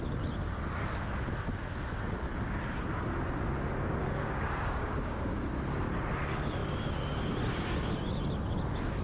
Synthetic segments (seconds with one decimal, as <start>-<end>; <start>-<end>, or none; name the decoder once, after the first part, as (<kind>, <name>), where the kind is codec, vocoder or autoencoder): 4.0-5.5 (codec, DAC)